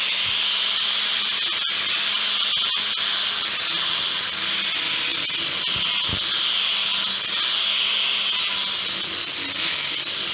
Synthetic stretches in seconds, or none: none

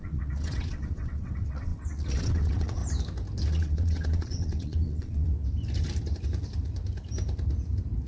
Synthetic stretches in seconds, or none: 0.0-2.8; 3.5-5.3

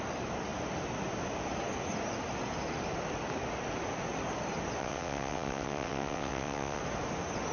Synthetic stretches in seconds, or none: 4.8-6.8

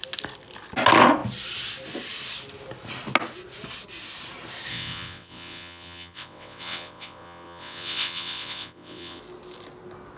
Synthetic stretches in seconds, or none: 4.7-9.2

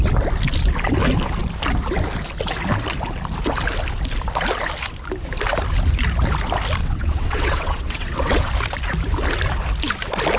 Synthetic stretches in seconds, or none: 6.8-8.5

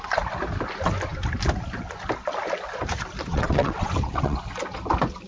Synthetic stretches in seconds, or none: 3.3-4.4

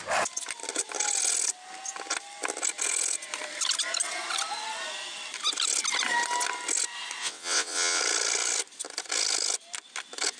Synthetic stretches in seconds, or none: 7.2-8.0